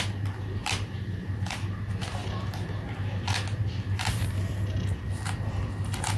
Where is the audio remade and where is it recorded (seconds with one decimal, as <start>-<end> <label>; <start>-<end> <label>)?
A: 0.0-0.6 recorded; 0.6-1.3 remade; 1.3-6.2 recorded